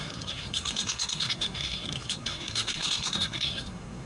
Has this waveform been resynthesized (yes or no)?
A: yes